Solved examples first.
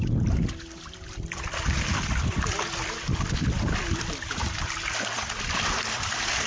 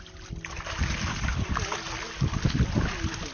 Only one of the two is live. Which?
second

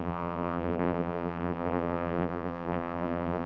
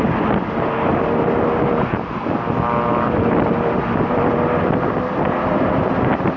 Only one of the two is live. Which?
second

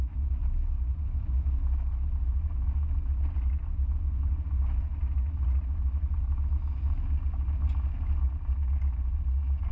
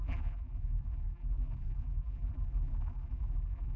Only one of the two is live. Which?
first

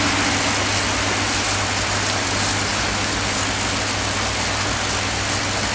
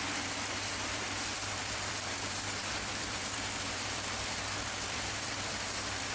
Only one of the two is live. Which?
first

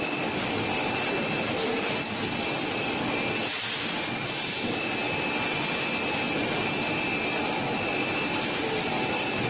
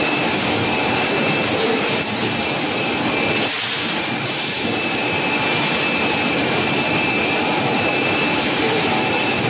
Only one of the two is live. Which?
first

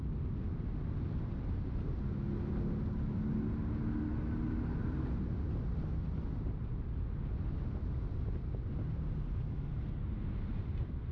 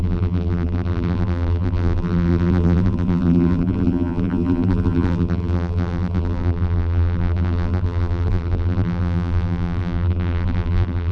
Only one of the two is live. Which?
first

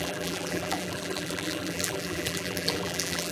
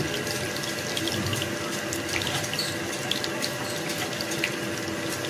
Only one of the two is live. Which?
second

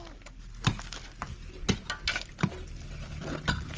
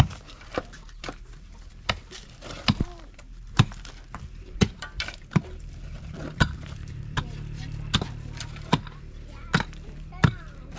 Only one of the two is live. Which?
first